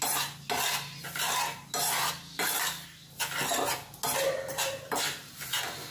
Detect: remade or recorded recorded